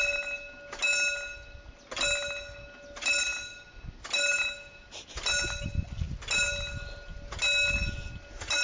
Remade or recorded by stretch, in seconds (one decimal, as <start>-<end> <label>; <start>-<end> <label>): 0.0-8.6 recorded